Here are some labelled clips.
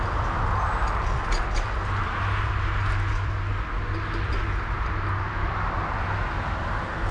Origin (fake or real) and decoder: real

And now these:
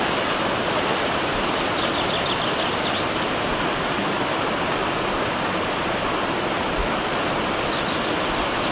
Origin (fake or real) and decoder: real